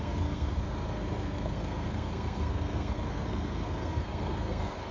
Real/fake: fake